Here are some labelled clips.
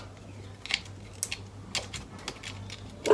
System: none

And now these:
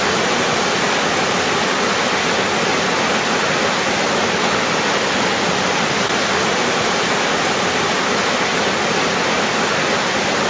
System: none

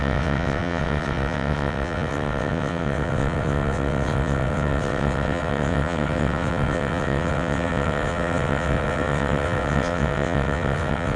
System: vocoder, WaveNeXt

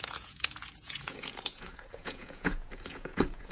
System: vocoder, Vocos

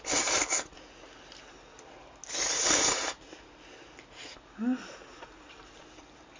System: none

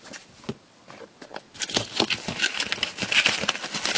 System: none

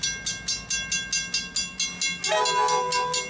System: none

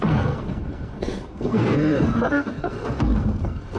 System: codec, SNAC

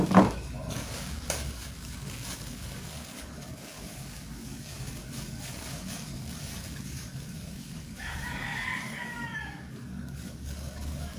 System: codec, DAC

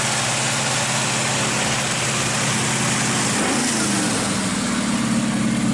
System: none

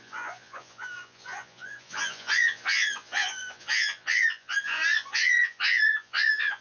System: vocoder, Vocos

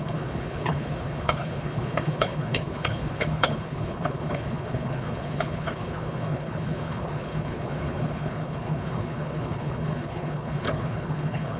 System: codec, HILCodec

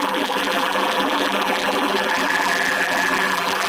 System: vocoder, BigVGAN v2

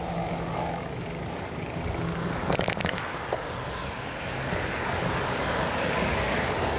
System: codec, DAC